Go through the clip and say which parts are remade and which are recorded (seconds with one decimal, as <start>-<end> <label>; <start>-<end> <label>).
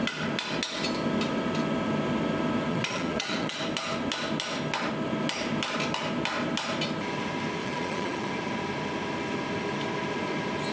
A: 0.0-2.7 recorded; 2.7-3.6 remade; 3.6-7.6 recorded; 7.6-8.3 remade; 8.3-10.7 recorded